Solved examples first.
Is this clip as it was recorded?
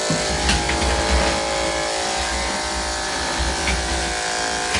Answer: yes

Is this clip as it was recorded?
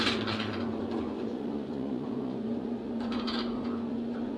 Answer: no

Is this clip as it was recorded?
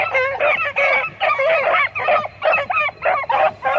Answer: yes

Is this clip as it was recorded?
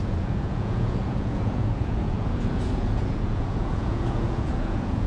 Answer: no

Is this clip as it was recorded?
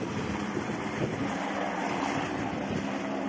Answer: yes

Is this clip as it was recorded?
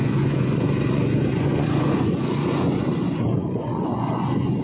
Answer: no